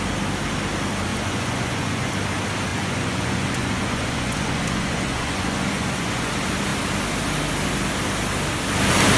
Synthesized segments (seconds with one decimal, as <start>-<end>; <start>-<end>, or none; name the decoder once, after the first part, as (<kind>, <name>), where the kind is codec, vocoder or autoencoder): 1.1-2.1 (vocoder, Vocos); 2.7-6.3